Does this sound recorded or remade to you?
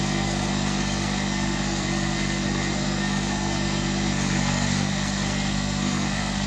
remade